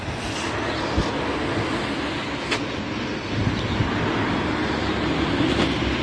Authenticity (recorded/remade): recorded